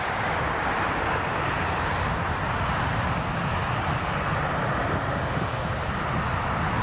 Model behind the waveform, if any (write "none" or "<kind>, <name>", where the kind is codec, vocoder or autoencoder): none